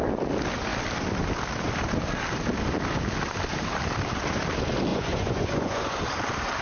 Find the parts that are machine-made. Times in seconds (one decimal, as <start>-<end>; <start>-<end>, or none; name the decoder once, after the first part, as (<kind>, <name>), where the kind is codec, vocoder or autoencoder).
4.9-6.0 (vocoder, Vocos)